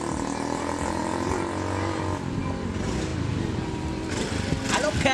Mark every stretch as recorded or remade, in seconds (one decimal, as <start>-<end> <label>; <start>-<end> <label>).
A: 0.0-5.1 recorded